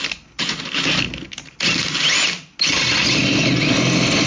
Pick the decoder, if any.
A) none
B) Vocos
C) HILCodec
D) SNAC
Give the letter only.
A